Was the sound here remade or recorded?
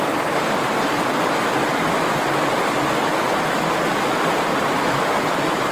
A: recorded